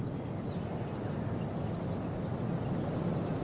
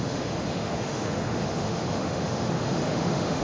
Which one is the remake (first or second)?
second